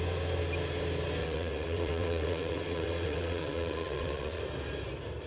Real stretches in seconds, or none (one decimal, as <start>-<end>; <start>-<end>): 0.0-1.2; 4.4-5.3